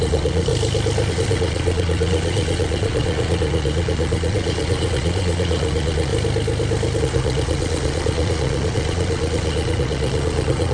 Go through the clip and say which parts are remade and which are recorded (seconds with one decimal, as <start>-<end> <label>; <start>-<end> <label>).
0.0-0.5 remade; 0.5-1.1 recorded; 1.1-6.1 remade; 6.1-7.0 recorded; 7.0-10.7 remade